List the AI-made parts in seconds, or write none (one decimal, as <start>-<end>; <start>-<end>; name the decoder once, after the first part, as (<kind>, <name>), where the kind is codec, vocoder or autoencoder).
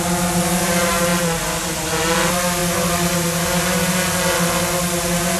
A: none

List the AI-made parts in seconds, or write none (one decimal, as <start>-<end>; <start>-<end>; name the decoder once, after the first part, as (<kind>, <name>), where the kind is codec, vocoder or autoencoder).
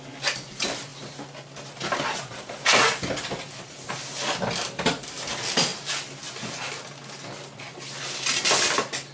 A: none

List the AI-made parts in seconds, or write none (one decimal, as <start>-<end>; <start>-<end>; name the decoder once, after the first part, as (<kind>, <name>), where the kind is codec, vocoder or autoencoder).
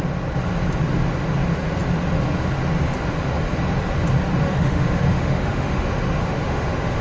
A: 4.3-7.0 (autoencoder, DAC-VAE)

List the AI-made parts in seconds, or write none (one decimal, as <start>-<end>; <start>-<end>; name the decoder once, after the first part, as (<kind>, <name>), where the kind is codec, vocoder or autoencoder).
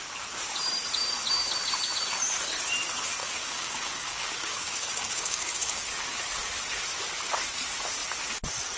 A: 3.2-5.9 (codec, DAC)